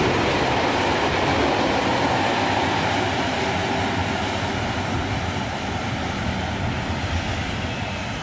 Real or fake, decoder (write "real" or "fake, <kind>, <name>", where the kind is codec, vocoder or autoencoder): real